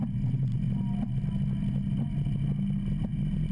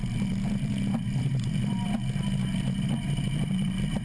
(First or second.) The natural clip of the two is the first